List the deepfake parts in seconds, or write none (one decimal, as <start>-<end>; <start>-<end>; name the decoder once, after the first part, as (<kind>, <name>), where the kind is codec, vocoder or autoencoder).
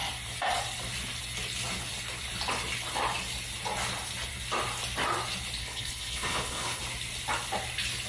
5.6-6.8 (codec, HILCodec)